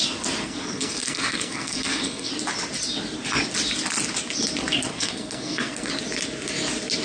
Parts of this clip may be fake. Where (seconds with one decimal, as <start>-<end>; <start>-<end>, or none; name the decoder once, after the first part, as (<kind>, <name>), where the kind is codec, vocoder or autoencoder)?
0.4-2.3 (codec, SNAC); 4.9-5.9